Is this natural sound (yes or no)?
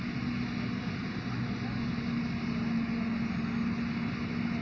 yes